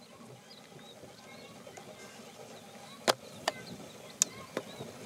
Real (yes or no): yes